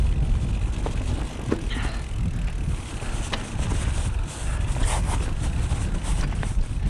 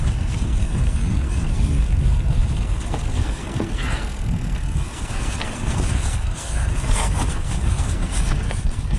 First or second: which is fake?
second